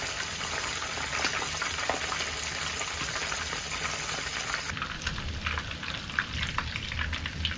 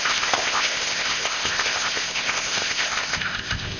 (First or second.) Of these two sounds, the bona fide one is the first